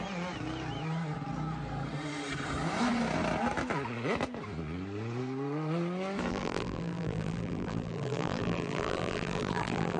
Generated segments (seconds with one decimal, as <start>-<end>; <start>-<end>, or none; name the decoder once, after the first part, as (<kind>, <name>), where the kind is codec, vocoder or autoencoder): 6.3-10.0 (vocoder, BigVGAN v2)